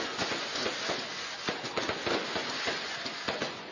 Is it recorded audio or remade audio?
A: remade